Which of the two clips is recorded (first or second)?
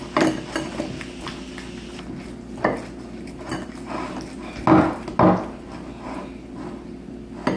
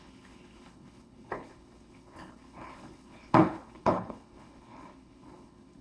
first